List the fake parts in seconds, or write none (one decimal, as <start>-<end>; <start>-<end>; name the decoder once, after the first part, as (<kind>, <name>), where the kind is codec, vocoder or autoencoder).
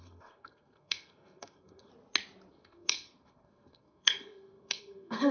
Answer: 0.0-1.9 (codec, SNAC); 2.5-5.3